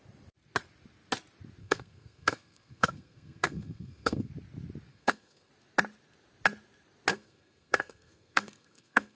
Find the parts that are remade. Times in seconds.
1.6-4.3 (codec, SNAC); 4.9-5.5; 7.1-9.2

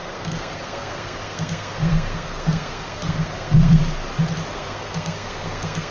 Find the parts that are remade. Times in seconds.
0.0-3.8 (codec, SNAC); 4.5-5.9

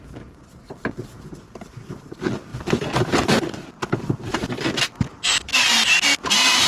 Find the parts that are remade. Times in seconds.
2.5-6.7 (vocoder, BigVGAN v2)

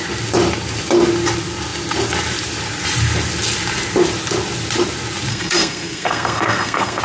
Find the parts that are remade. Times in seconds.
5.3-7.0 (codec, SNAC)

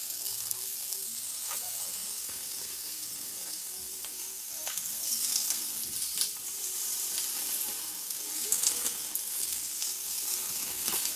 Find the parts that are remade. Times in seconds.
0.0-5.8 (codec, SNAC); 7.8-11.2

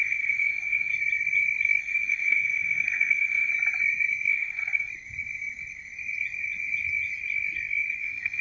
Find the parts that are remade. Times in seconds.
0.0-0.9 (codec, SNAC); 1.8-3.5; 4.3-4.9; 8.0-8.4